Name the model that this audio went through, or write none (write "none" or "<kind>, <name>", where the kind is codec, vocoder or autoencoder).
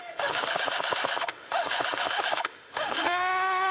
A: autoencoder, DAC-VAE